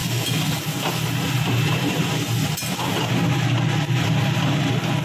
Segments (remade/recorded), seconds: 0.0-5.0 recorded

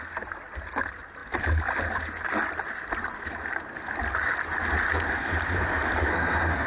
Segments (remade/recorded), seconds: 0.0-6.1 recorded; 6.1-6.7 remade

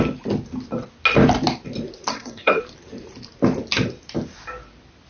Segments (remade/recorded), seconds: 0.0-2.1 recorded; 2.1-2.6 remade; 2.6-5.1 recorded

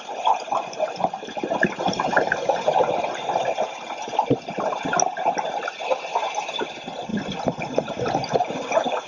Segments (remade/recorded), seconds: 0.0-9.1 recorded